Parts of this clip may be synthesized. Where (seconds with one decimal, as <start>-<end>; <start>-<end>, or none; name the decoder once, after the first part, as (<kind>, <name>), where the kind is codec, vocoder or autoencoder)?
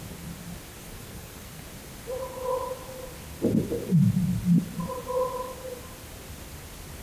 0.8-1.6 (codec, SNAC)